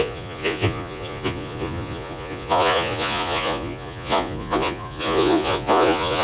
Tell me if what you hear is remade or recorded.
remade